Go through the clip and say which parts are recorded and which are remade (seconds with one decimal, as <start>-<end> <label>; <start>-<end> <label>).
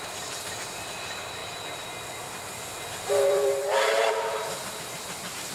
0.0-1.4 remade; 1.4-2.3 recorded; 2.3-2.7 remade; 2.7-3.3 recorded; 3.3-5.5 remade